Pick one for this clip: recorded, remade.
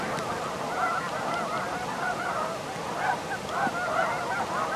recorded